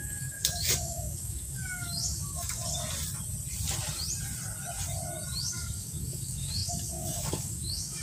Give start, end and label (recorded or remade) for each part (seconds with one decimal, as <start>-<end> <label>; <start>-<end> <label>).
0.0-2.6 remade; 2.6-5.4 recorded; 5.4-8.0 remade